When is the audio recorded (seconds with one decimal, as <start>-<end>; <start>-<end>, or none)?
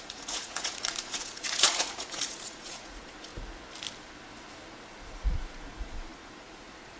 3.3-4.9